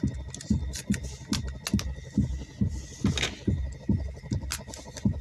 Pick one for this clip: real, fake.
real